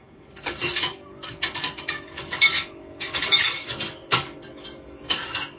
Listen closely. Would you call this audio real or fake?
fake